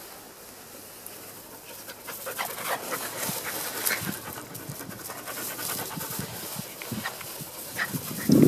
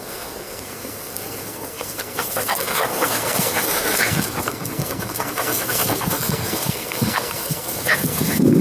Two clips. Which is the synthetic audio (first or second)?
second